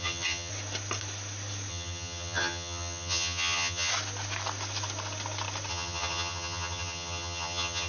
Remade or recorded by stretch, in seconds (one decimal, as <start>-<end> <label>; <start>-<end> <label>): 0.0-0.5 remade; 0.5-1.7 recorded; 1.7-3.9 remade; 3.9-5.7 recorded; 5.7-7.9 remade